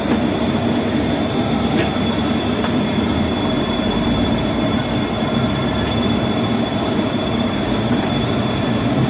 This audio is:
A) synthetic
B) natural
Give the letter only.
A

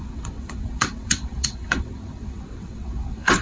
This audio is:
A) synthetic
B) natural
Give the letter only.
A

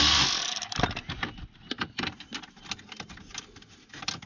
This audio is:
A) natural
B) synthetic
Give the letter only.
A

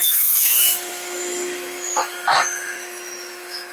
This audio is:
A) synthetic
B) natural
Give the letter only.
A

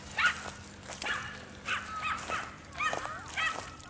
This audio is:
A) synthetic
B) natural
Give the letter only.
B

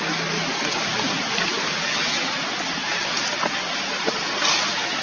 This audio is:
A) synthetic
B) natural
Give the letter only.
B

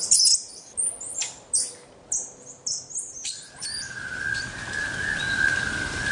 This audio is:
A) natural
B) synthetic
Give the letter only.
B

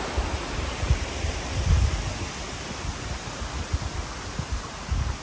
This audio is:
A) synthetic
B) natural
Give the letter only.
B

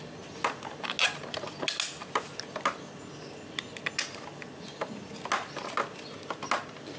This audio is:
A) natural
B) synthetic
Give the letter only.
A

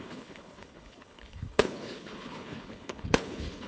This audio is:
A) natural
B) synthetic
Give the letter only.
B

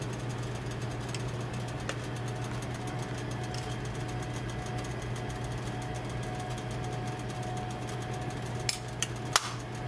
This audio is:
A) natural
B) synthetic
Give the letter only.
A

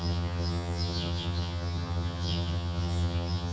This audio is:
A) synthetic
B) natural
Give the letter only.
A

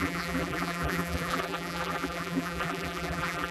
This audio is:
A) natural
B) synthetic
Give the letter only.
B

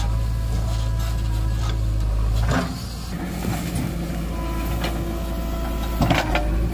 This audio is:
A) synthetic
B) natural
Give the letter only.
B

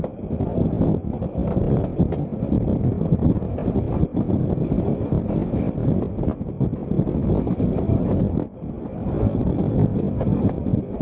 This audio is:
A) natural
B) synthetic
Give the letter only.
A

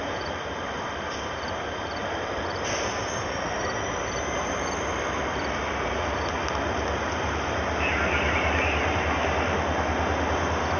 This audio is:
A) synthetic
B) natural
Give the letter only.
A